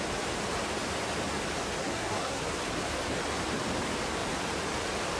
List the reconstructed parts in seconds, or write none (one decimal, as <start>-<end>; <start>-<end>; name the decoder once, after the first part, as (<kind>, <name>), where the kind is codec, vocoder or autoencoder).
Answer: 1.8-2.4 (codec, SNAC)